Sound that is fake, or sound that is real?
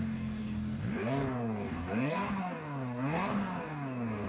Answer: fake